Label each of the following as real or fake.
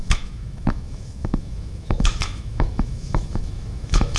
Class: fake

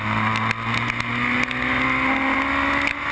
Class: real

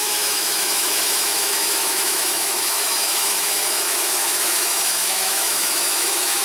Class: fake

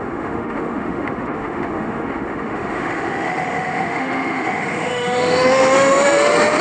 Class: fake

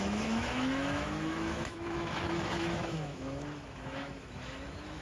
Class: fake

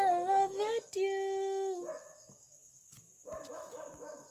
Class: fake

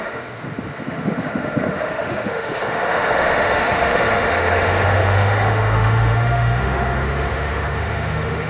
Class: fake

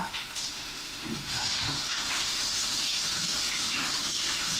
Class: fake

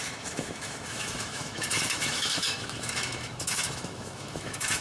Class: fake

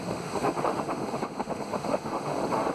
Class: fake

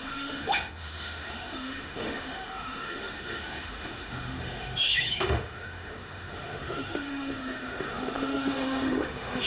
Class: fake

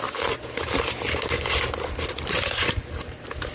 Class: real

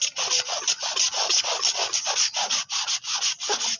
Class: real